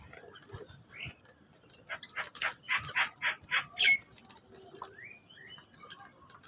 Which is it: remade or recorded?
recorded